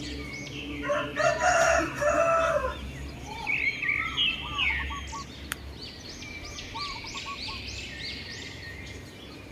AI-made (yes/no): no